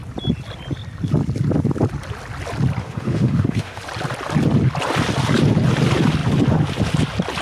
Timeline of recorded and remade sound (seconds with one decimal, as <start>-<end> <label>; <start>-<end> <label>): 0.0-2.8 recorded; 2.8-3.8 remade; 3.8-7.4 recorded